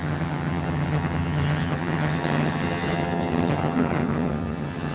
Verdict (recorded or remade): remade